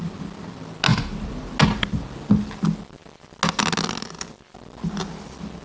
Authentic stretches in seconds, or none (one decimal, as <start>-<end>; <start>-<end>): 0.0-5.6